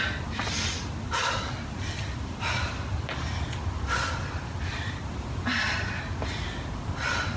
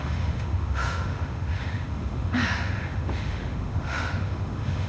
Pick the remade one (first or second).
second